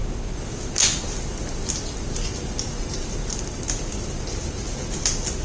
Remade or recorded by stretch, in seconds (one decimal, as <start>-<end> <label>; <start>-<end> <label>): 0.0-5.4 recorded